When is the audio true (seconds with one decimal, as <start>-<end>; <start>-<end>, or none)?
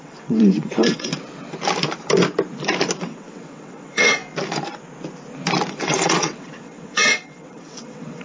1.1-3.0; 4.2-5.7